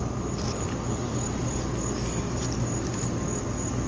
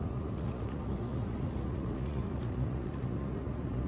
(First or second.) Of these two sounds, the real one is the first